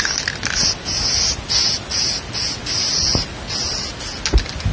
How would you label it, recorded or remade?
recorded